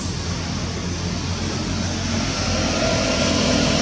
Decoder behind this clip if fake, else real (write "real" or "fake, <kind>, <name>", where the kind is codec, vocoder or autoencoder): real